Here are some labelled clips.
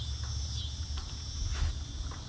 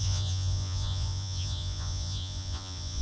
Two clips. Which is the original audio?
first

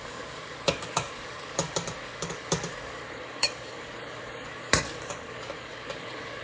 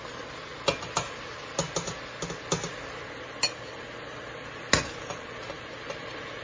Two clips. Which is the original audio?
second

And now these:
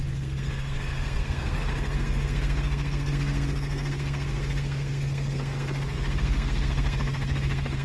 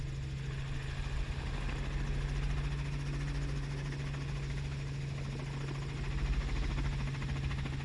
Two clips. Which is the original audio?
second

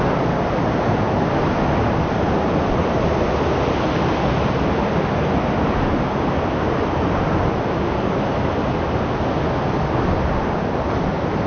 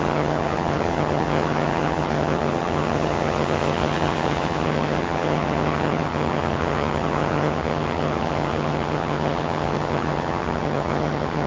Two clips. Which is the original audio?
first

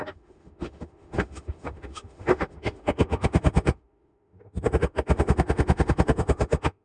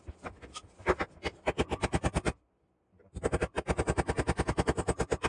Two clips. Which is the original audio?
second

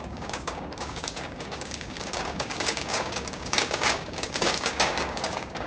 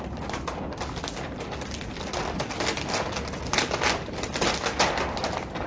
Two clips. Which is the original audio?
second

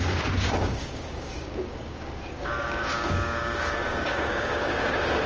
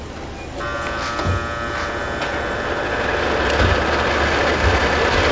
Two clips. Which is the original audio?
second